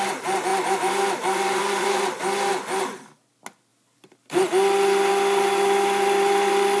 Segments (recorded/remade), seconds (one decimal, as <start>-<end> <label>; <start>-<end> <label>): 0.0-0.5 recorded; 0.5-2.0 remade; 2.0-3.7 recorded; 3.7-4.4 remade; 4.4-5.1 recorded; 5.1-6.8 remade